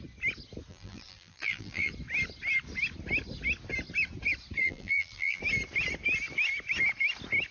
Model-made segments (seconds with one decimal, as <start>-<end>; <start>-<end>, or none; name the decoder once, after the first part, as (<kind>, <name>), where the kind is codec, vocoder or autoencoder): 0.7-1.9 (vocoder, BigVGAN v2); 4.6-5.4